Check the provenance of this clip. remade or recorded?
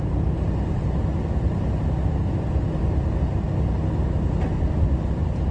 recorded